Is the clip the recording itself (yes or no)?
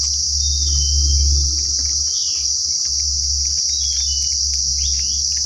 yes